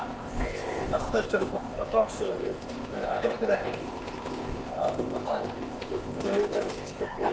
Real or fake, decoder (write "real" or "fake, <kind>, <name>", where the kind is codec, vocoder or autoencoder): fake, codec, ZipCodec